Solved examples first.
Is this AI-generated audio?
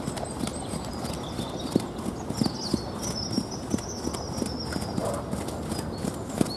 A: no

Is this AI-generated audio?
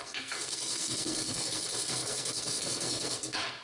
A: yes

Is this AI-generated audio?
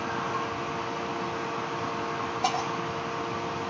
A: no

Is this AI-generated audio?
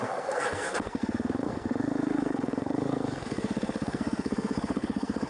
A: yes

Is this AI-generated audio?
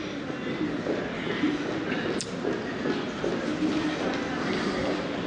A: no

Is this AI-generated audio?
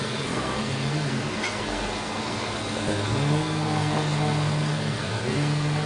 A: yes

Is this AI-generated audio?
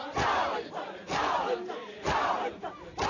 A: no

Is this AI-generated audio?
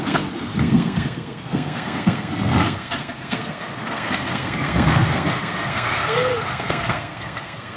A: yes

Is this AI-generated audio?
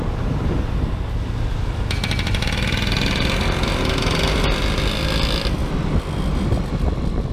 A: no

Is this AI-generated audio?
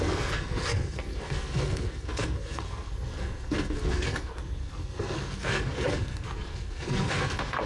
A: yes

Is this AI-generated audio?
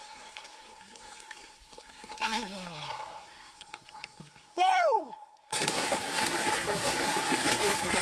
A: yes